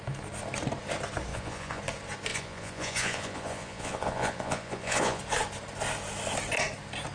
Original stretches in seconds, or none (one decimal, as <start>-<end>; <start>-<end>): 0.0-1.3; 1.8-2.3; 5.2-7.1